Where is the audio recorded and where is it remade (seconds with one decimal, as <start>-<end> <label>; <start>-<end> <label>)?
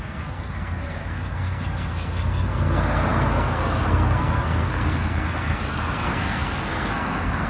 0.0-7.5 remade